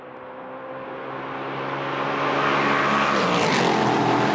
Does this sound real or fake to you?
real